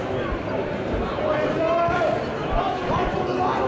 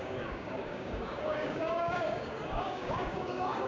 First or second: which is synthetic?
second